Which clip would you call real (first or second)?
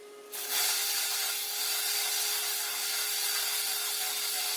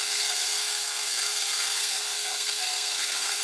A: first